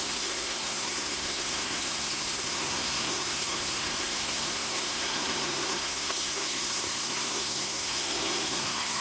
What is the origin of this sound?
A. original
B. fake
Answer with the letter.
B